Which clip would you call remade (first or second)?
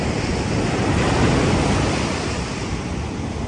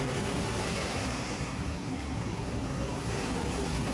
second